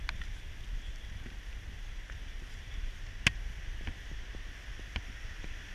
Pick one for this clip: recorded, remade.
recorded